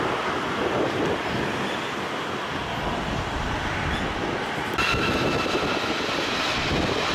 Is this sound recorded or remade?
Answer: recorded